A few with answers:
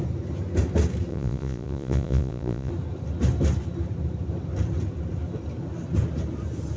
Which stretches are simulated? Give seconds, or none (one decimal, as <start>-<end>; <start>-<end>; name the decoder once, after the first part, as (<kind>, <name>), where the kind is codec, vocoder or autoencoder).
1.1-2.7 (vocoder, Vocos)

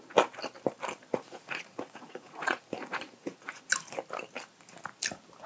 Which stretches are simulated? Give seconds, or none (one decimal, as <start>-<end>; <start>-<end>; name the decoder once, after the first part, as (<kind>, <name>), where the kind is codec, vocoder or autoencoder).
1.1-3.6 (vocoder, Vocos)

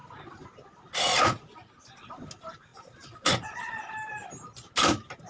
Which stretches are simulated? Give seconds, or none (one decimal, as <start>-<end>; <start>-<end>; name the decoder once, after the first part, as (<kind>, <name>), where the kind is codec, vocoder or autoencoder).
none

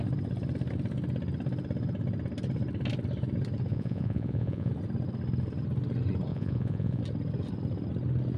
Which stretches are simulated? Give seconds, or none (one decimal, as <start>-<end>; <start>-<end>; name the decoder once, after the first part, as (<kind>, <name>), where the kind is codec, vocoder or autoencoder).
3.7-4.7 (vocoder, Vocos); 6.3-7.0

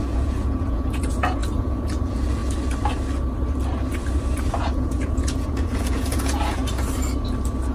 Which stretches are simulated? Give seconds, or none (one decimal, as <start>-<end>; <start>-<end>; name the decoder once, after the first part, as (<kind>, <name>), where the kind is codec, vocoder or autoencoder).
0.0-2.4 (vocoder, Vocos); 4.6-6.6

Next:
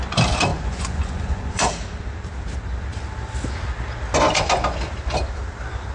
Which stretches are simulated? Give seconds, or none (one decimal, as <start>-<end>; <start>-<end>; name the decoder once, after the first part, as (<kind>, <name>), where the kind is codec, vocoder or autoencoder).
0.5-1.7 (vocoder, Vocos)

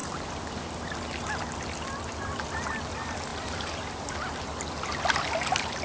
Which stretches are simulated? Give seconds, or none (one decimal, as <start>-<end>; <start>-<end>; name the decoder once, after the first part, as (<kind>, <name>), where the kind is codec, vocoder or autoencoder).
none